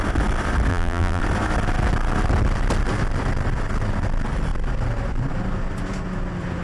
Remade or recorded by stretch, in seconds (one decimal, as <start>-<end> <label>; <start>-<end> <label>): 0.0-0.7 recorded; 0.7-1.2 remade; 1.2-6.6 recorded